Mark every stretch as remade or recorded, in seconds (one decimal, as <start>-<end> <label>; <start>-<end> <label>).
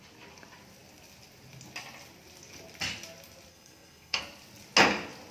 0.0-3.5 recorded; 3.5-4.2 remade; 4.2-5.3 recorded